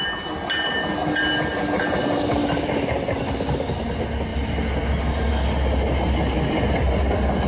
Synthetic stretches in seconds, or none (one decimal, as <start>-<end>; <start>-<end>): none